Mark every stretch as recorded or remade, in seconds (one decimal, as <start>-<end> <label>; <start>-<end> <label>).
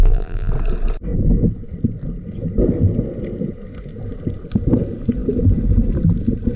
0.0-0.5 remade; 0.5-6.6 recorded